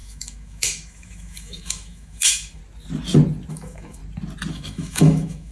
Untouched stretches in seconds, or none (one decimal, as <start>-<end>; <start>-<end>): 2.6-3.5; 4.0-4.5